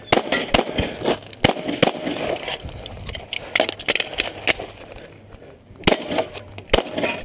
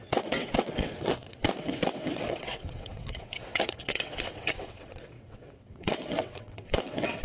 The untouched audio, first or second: first